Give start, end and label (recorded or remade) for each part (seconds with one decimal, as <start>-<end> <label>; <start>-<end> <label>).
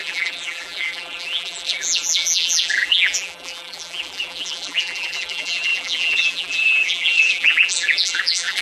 0.0-8.6 remade